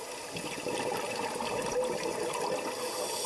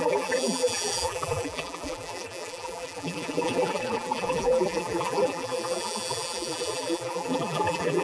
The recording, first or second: first